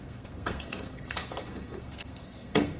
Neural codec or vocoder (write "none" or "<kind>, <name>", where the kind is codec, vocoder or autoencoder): codec, SNAC